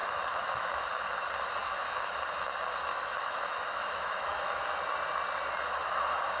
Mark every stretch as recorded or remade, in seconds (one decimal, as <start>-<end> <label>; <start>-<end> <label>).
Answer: 0.0-1.0 remade; 1.0-1.6 recorded; 1.6-2.1 remade; 2.1-2.9 recorded; 2.9-4.6 remade; 4.6-6.4 recorded